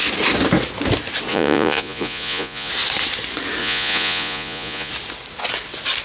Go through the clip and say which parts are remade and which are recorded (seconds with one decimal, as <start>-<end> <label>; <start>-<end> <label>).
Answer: 0.0-1.3 recorded; 1.3-2.7 remade; 2.7-3.6 recorded; 3.6-4.9 remade; 4.9-6.0 recorded